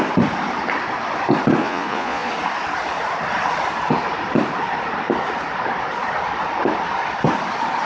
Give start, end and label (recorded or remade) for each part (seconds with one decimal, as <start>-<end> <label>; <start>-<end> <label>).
0.0-1.6 recorded; 1.6-2.3 remade; 2.3-7.9 recorded